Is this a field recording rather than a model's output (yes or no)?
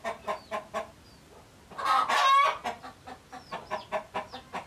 yes